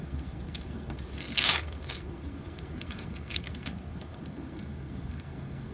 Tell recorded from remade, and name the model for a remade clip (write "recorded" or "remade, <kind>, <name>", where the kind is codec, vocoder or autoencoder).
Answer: remade, codec, SNAC